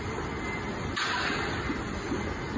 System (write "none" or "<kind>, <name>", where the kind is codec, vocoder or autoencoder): none